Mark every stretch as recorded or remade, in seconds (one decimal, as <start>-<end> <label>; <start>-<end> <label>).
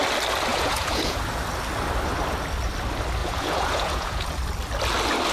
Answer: 0.0-0.5 recorded; 0.5-1.2 remade; 1.2-3.2 recorded; 3.2-4.4 remade; 4.4-5.3 recorded